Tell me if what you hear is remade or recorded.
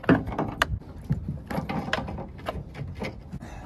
recorded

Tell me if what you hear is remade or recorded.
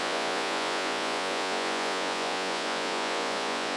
remade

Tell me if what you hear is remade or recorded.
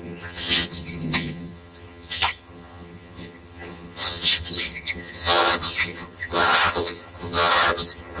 remade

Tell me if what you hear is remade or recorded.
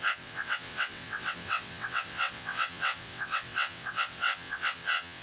remade